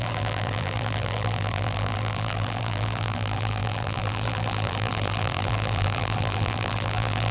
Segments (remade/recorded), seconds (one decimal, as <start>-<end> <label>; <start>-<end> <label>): 0.0-7.3 remade